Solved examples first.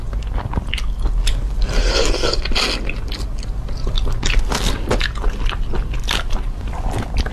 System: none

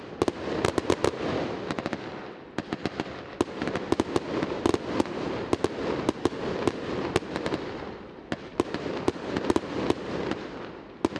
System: none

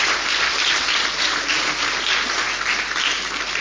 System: none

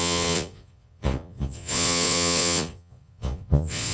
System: vocoder, Vocos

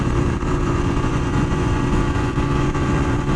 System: vocoder, Vocos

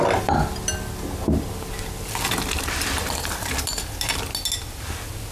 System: none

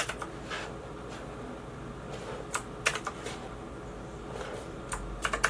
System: none